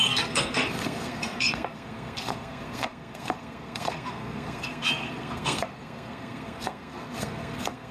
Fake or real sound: fake